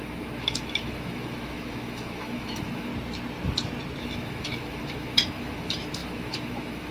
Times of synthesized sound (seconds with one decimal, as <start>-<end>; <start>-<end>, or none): 0.0-2.9; 4.0-6.9